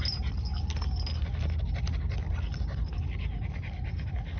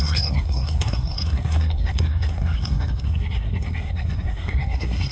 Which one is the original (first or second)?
first